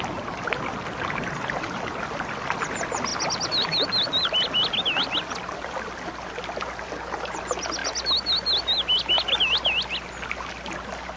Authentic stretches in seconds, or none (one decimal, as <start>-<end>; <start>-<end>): 0.0-11.2